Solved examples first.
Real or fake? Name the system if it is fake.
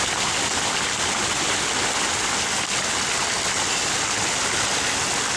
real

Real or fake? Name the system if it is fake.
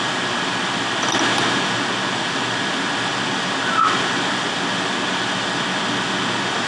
real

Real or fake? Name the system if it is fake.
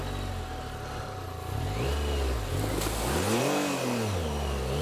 real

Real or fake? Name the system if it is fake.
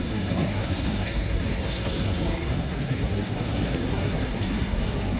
fake, codec, SNAC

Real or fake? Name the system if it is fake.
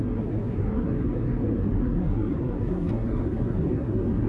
fake, codec, SNAC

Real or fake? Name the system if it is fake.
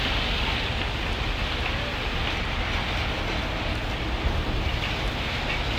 real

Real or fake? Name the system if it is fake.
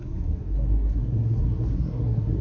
fake, codec, SNAC